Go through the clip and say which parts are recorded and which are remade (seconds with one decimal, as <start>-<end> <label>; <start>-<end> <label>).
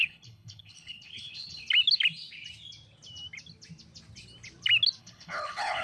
0.0-1.6 remade; 1.6-5.0 recorded; 5.0-5.8 remade